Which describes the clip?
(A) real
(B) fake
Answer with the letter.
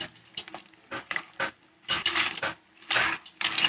A